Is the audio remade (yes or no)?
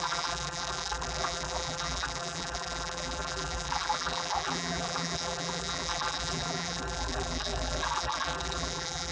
yes